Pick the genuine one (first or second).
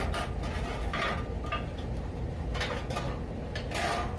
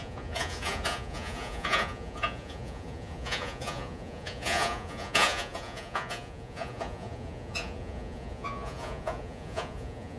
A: first